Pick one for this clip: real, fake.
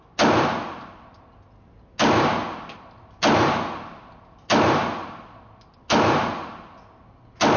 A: real